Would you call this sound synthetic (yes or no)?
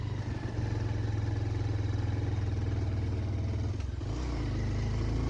no